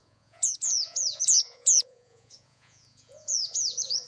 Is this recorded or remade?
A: remade